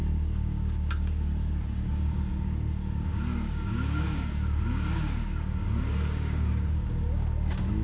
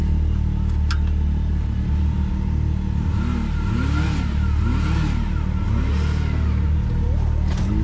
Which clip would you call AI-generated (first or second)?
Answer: first